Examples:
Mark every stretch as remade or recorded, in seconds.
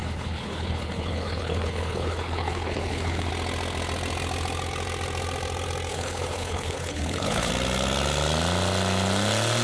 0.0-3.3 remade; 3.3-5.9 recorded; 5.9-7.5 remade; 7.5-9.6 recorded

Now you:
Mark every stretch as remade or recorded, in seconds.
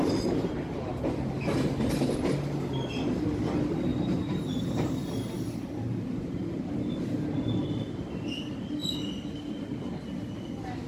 0.0-3.9 recorded; 3.9-6.9 remade; 6.9-10.9 recorded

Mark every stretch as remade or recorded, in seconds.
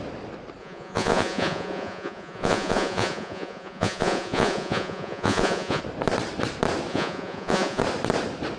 0.0-0.6 recorded; 0.6-5.8 remade; 5.8-6.9 recorded; 6.9-7.8 remade; 7.8-8.6 recorded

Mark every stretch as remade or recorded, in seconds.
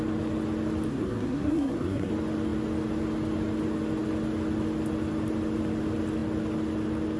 0.0-0.9 recorded; 0.9-2.1 remade; 2.1-7.2 recorded